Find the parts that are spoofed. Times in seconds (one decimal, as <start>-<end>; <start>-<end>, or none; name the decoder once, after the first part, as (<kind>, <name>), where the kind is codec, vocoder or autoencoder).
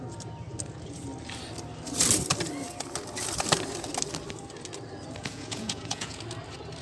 5.2-6.2 (vocoder, Vocos)